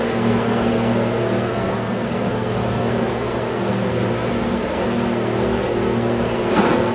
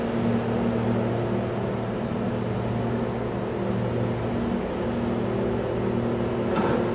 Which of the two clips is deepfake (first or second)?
first